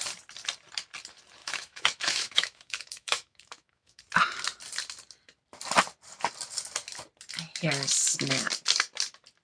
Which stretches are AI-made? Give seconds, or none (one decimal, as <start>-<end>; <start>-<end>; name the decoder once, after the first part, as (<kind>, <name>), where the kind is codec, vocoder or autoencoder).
1.4-4.0 (autoencoder, DAC-VAE)